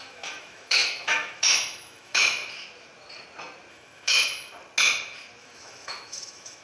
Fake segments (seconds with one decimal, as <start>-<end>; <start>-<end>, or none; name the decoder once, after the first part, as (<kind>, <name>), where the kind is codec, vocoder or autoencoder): 0.0-2.4 (autoencoder, DAC-VAE); 3.7-4.5; 5.4-6.6